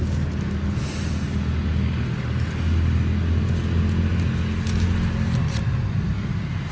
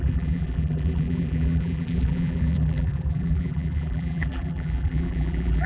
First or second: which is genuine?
first